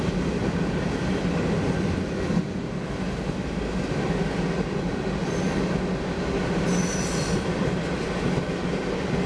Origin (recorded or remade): recorded